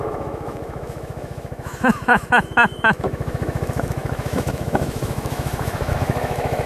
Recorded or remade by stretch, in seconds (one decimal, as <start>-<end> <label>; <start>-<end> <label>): 0.0-6.7 remade